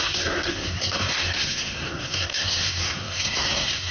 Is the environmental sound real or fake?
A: fake